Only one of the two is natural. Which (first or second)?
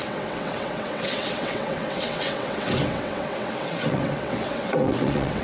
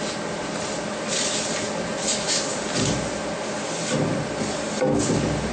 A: second